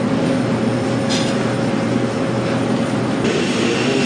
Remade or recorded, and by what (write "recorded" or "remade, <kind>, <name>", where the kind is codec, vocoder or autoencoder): recorded